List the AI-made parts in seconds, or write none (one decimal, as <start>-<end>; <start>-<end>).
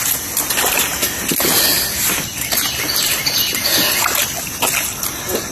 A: none